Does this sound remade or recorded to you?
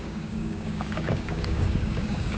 remade